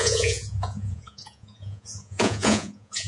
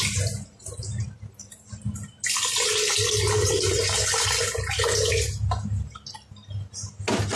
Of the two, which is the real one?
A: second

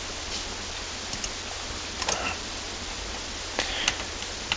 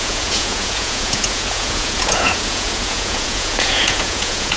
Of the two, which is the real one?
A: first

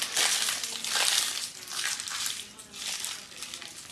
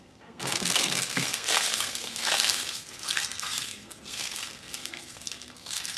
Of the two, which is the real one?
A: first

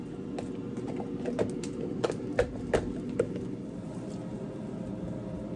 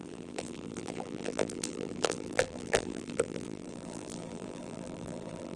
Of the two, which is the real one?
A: first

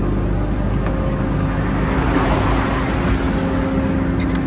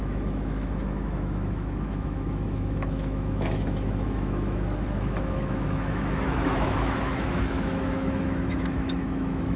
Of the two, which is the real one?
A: first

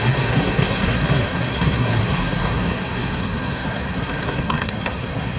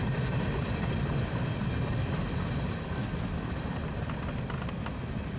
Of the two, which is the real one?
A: second